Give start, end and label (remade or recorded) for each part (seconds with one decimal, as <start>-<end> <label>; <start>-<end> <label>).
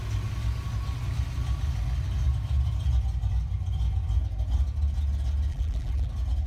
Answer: 0.0-5.5 recorded; 5.5-6.1 remade; 6.1-6.5 recorded